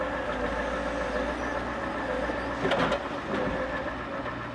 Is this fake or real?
real